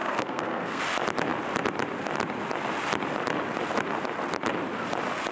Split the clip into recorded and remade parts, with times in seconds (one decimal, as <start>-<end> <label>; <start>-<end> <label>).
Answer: 0.0-0.8 remade; 0.8-5.3 recorded